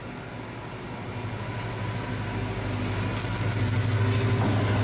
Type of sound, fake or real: real